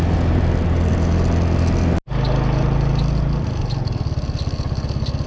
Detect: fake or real real